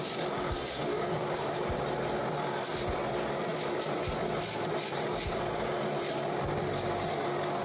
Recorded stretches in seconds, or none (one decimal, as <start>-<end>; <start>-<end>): 0.0-0.9; 1.5-7.6